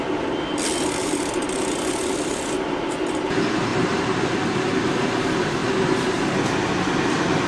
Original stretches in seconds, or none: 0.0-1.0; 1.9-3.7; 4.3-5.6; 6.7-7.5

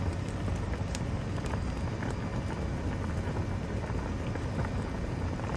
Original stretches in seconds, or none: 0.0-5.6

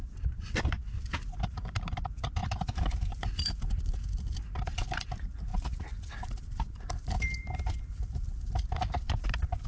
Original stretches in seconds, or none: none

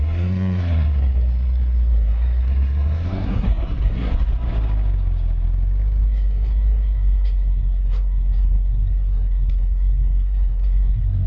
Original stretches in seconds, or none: 4.3-6.0

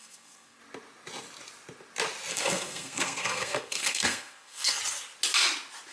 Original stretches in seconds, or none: 0.6-2.3; 4.8-5.9

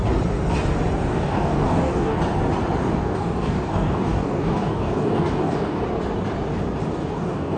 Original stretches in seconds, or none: 0.0-1.1; 2.2-2.8; 5.8-7.0

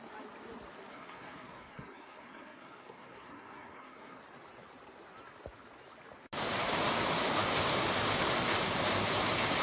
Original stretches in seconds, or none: 0.0-0.9; 4.2-9.6

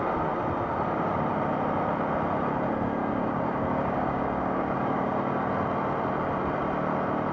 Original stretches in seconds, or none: 0.0-3.0; 5.5-7.3